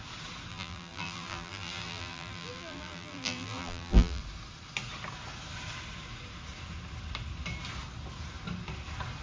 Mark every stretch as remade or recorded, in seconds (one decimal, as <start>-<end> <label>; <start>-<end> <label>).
0.0-0.5 recorded; 0.5-4.2 remade; 4.2-9.2 recorded